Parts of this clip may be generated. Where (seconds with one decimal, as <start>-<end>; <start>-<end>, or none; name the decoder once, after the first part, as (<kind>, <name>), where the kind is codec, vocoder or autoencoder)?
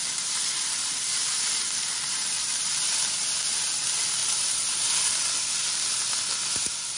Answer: none